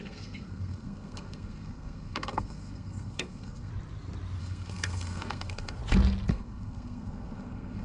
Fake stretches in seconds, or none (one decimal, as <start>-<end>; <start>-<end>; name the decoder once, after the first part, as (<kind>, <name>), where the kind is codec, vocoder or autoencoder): 0.0-3.7 (codec, SNAC); 4.4-5.8; 6.3-7.8